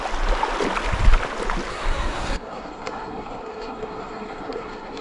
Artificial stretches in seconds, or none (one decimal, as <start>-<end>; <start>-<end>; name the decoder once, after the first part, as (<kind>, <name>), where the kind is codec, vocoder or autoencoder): 1.7-5.0 (codec, SNAC)